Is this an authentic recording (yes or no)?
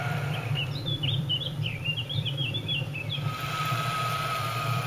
no